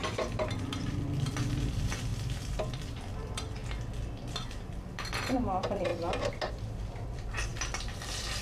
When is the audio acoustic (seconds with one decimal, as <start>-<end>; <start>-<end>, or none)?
3.6-4.3; 5.9-6.5